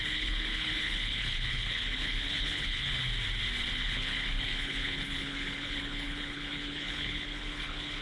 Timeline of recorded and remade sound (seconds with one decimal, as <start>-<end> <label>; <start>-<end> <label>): 0.0-3.1 remade; 3.1-3.7 recorded; 3.7-8.0 remade

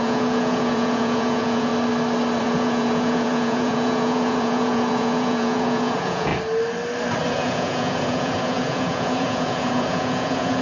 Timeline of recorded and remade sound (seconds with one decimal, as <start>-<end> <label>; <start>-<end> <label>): 0.0-1.7 remade; 1.7-2.4 recorded; 2.4-6.3 remade; 6.3-7.3 recorded; 7.3-10.6 remade

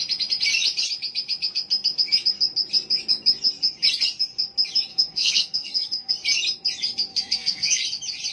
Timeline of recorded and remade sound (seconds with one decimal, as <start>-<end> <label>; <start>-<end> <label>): 0.0-4.9 recorded; 4.9-6.1 remade; 6.1-7.1 recorded; 7.1-7.8 remade; 7.8-8.3 recorded